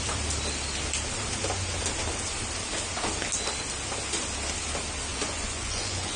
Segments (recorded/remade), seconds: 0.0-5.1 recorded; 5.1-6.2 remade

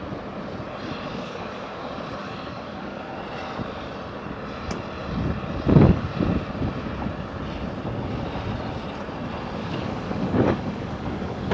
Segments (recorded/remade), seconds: 0.0-1.1 recorded; 1.1-1.8 remade; 1.8-2.2 recorded; 2.2-3.2 remade; 3.2-9.6 recorded; 9.6-11.5 remade

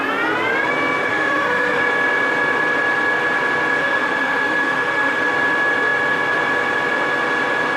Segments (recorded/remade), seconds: 0.0-1.1 recorded; 1.1-1.8 remade; 1.8-3.8 recorded; 3.8-5.3 remade; 5.3-7.8 recorded

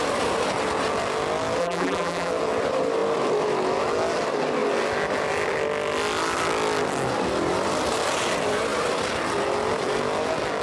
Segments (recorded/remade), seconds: 0.0-1.6 recorded; 1.6-2.3 remade; 2.3-10.6 recorded